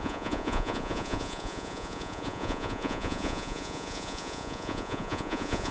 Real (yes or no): no